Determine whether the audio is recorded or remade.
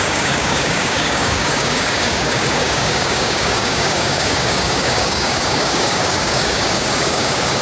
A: remade